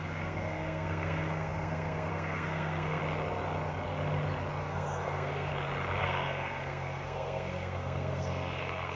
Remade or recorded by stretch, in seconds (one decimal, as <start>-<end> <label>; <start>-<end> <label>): 0.0-3.0 remade; 3.0-4.6 recorded; 4.6-5.5 remade; 5.5-6.0 recorded; 6.0-9.0 remade